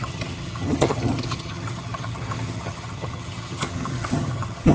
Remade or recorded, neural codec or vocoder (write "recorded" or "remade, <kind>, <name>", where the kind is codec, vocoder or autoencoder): remade, vocoder, HiFi-GAN